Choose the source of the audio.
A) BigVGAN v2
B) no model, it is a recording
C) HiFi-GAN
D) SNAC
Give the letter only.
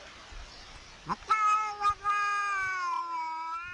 B